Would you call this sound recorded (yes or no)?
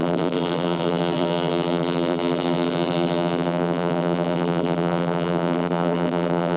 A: no